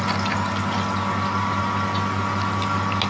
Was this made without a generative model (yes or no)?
yes